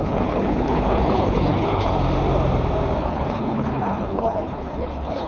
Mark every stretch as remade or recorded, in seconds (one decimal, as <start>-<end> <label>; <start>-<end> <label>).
0.0-1.9 remade; 1.9-3.0 recorded; 3.0-5.3 remade